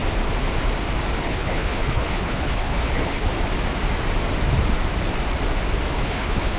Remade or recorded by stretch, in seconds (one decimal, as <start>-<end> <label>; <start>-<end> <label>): 0.0-1.2 recorded; 1.2-3.3 remade; 3.3-5.9 recorded; 5.9-6.6 remade